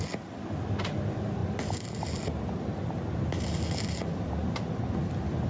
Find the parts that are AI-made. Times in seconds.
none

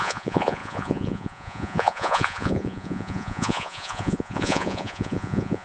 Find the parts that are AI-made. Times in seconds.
0.0-5.6 (vocoder, Vocos)

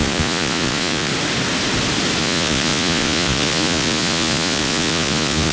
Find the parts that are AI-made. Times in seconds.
0.0-1.1 (vocoder, Vocos); 2.2-5.5

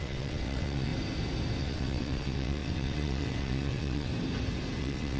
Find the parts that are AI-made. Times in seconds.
0.0-0.9 (vocoder, WaveNeXt); 1.6-4.1; 4.8-5.2

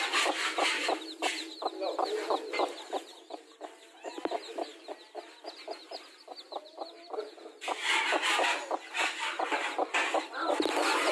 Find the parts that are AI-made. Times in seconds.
none

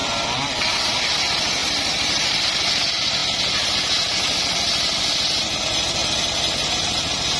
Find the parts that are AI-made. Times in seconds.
1.6-2.4 (vocoder, BigVGAN v2)

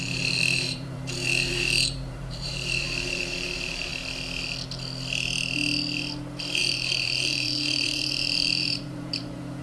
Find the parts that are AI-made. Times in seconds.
0.0-3.9 (vocoder, BigVGAN v2); 6.6-9.6

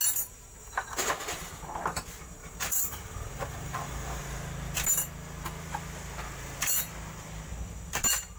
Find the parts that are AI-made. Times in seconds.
0.6-1.1 (vocoder, BigVGAN v2); 2.4-4.2